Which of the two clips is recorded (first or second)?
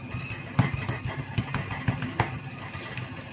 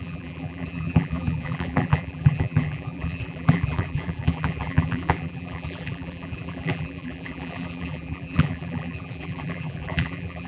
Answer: first